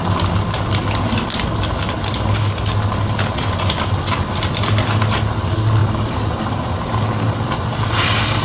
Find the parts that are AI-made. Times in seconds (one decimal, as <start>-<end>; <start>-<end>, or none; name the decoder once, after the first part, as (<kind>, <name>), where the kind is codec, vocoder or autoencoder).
5.8-7.0 (vocoder, BigVGAN v2)

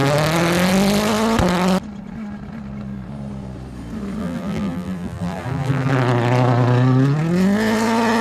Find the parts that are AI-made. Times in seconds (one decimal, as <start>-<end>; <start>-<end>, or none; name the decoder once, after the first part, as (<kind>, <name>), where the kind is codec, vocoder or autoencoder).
4.2-5.9 (vocoder, BigVGAN v2)

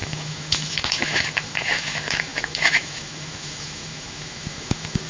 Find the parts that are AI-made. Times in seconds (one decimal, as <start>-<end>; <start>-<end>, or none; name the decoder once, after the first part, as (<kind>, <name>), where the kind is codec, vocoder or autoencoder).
0.0-5.1 (autoencoder, DAC-VAE)